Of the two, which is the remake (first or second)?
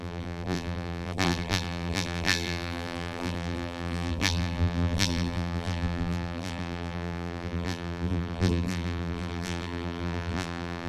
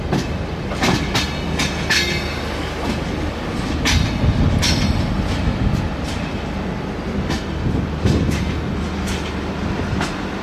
first